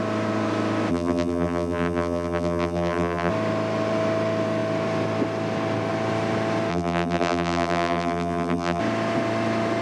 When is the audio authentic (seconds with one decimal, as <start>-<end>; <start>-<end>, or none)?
0.0-0.9; 3.3-6.7; 8.8-9.8